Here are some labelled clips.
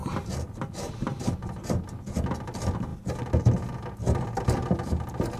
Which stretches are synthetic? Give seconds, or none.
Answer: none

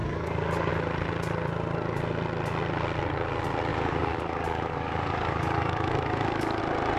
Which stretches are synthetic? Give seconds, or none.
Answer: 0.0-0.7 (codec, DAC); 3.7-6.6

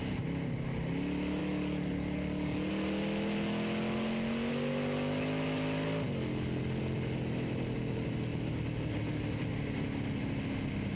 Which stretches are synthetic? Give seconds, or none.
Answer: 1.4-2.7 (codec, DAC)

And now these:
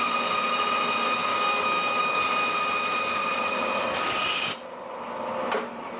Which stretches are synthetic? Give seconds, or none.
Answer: 1.3-2.2 (codec, DAC)

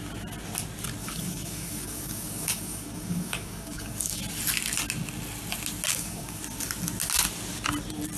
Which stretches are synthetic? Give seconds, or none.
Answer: 1.0-4.2 (codec, DAC); 5.9-6.4

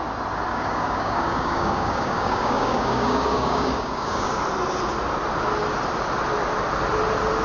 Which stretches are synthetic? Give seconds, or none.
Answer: 0.5-4.4 (codec, DAC)